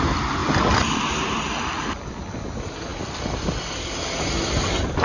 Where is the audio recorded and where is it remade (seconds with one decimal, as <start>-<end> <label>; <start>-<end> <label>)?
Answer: 0.0-5.0 recorded